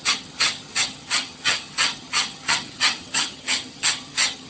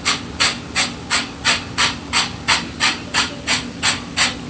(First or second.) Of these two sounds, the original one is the second